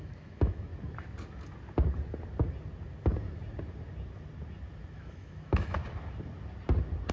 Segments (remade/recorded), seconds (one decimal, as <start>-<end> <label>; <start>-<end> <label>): 0.0-0.7 remade; 0.7-4.9 recorded; 4.9-5.8 remade; 5.8-7.1 recorded